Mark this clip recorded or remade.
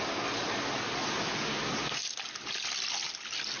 recorded